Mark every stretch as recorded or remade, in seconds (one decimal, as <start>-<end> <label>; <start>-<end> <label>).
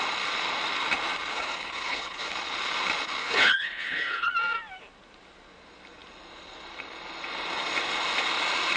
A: 0.0-1.3 recorded; 1.3-2.3 remade; 2.3-3.2 recorded; 3.2-4.3 remade; 4.3-8.8 recorded